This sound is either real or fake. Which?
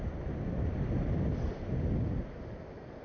real